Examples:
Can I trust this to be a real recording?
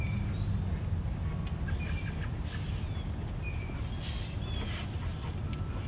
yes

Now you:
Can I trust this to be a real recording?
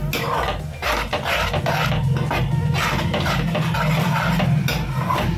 yes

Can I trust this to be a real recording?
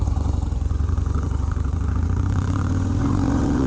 no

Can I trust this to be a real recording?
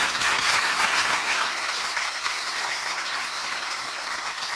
no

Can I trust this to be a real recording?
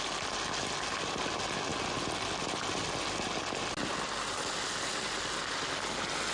yes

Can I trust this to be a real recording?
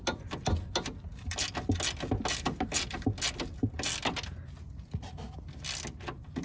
yes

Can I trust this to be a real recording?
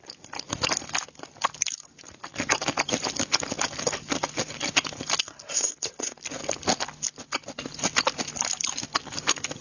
yes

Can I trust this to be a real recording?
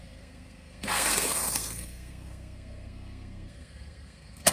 no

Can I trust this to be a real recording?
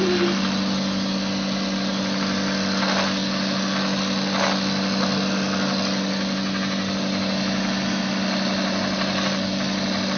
yes